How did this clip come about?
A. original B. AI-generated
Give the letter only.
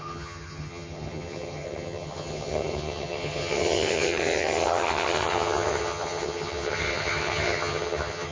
B